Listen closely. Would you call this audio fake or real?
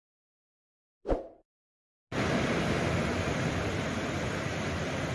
real